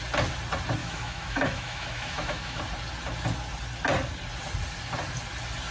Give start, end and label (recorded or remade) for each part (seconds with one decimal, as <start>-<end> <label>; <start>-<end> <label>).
0.0-0.8 recorded; 0.8-2.6 remade; 2.6-5.7 recorded